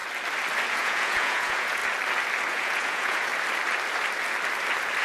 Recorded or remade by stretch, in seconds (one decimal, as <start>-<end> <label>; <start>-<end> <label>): 0.0-0.7 recorded; 0.7-1.8 remade; 1.8-2.5 recorded; 2.5-3.3 remade; 3.3-5.0 recorded